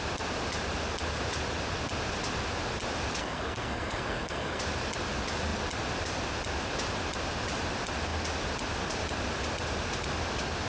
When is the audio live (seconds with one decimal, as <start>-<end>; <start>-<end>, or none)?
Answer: 0.0-3.2; 4.6-10.7